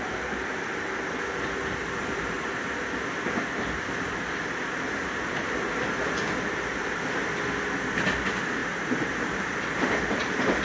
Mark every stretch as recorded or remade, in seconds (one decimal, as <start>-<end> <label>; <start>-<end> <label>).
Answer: 0.0-1.8 recorded; 1.8-2.4 remade; 2.4-8.6 recorded; 8.6-10.6 remade